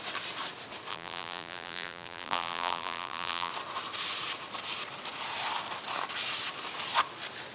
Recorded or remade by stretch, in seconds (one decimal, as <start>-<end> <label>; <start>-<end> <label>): 0.0-0.9 recorded; 0.9-3.5 remade; 3.5-7.5 recorded